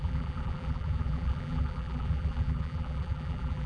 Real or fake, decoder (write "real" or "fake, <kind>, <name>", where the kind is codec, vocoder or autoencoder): fake, vocoder, BigVGAN v2